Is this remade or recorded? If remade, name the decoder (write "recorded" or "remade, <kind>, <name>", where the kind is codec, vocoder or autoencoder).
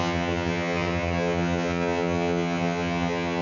remade, vocoder, HiFi-GAN